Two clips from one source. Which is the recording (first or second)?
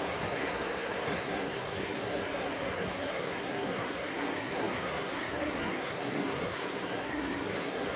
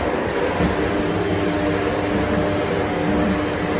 second